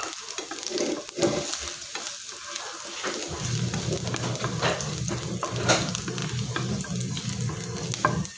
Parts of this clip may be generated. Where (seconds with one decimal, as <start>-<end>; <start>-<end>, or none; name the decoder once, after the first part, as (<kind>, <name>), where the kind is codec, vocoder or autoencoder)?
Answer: none